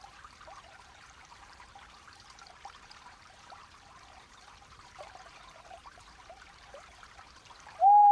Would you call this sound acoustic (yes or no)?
no